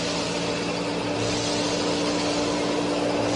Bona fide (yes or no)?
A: yes